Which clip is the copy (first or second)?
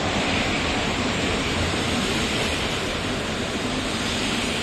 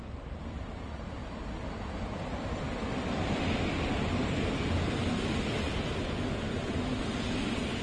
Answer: first